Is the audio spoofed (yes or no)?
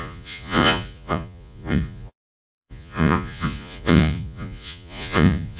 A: yes